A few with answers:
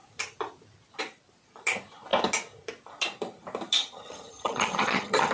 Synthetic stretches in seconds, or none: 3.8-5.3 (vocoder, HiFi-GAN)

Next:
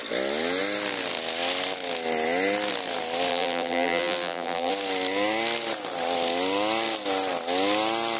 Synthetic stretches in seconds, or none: 3.3-4.7 (vocoder, BigVGAN v2)